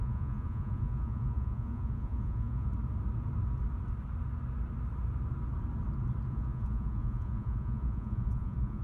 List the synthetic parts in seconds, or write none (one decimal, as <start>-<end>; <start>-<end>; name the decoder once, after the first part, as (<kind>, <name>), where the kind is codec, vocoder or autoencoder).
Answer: 0.0-2.7 (vocoder, Vocos); 6.3-8.8